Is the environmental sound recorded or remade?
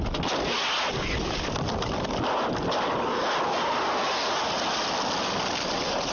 recorded